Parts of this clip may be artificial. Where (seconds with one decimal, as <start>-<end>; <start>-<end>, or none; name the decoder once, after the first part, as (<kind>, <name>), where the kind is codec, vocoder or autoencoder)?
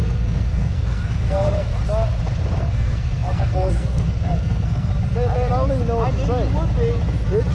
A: 0.0-1.7 (codec, SNAC); 2.6-4.9